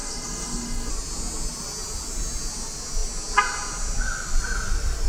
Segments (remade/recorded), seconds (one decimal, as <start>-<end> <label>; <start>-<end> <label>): 0.0-0.9 remade; 0.9-5.1 recorded